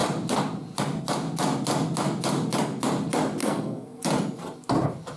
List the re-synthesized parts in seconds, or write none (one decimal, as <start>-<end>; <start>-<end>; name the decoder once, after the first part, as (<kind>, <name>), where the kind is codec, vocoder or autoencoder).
3.4-4.0 (codec, SNAC)